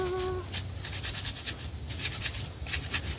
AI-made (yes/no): no